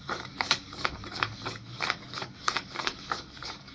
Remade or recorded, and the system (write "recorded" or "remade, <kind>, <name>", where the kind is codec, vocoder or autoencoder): remade, codec, DAC